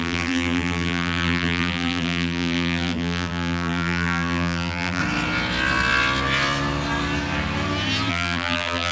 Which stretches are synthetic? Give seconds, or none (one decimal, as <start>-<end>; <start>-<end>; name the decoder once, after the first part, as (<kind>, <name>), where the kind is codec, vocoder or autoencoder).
0.0-5.0 (vocoder, BigVGAN v2); 8.1-8.9